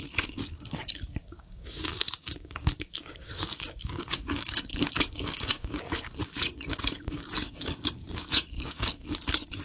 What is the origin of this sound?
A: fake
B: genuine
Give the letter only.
A